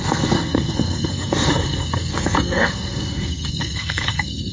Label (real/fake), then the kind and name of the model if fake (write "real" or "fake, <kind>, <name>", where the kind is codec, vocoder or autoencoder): fake, codec, SNAC